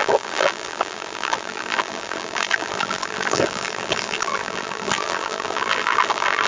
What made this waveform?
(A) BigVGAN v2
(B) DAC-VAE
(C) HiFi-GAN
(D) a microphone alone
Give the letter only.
A